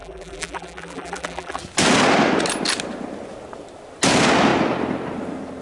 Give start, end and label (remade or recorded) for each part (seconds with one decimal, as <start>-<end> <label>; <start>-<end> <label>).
0.0-1.6 remade; 1.6-5.6 recorded